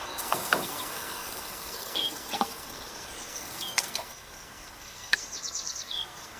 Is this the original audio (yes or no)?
no